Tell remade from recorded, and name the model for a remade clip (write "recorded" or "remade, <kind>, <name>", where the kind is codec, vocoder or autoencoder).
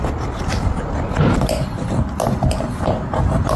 recorded